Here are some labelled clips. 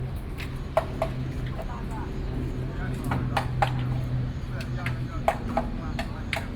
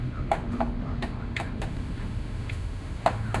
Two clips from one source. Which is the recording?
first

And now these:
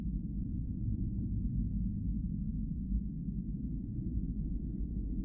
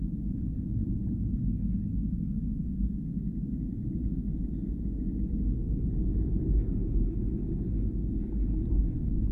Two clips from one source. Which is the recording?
second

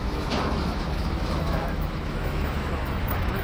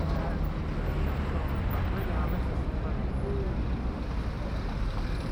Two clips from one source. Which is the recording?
second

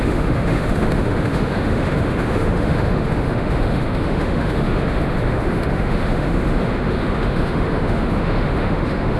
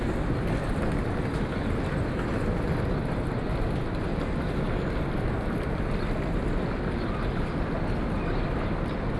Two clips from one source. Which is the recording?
second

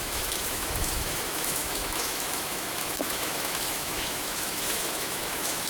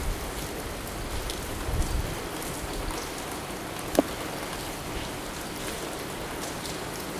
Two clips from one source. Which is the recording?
second